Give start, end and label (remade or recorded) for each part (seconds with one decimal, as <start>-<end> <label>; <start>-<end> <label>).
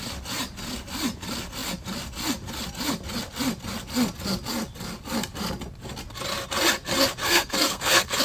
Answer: 0.0-7.2 recorded; 7.2-8.2 remade